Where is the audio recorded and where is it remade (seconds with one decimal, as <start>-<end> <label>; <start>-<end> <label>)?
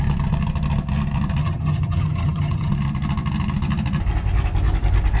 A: 0.0-1.4 recorded; 1.4-2.7 remade; 2.7-5.2 recorded